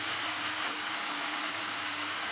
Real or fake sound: fake